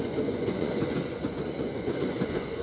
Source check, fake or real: fake